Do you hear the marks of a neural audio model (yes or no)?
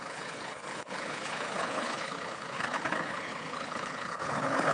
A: yes